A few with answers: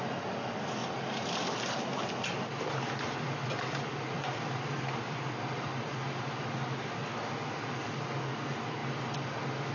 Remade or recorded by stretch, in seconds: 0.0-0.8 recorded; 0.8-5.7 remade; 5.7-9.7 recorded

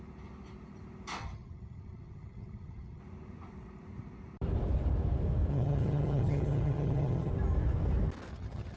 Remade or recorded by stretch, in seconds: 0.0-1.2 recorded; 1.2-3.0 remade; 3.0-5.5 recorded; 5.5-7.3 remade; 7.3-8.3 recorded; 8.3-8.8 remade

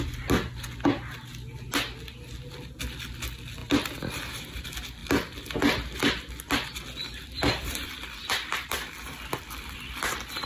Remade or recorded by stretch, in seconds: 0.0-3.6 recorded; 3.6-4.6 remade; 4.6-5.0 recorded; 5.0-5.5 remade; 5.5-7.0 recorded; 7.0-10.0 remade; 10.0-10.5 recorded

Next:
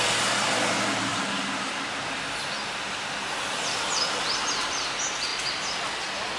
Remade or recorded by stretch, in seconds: 0.0-6.4 recorded

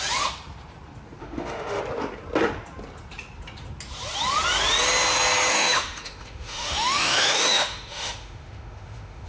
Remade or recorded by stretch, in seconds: 0.0-1.2 recorded; 1.2-1.8 remade; 1.8-5.5 recorded; 5.5-9.3 remade

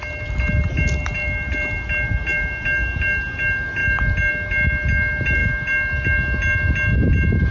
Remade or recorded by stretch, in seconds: 0.0-7.5 recorded